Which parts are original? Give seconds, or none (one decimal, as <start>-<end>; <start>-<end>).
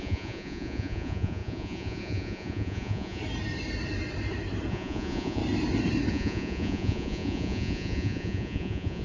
3.2-4.7; 5.4-6.1